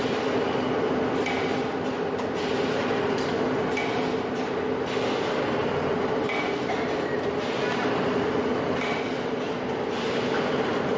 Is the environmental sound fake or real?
real